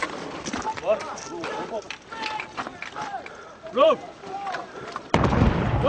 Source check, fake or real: fake